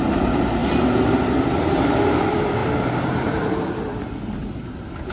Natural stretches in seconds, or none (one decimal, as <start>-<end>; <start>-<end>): 0.6-1.5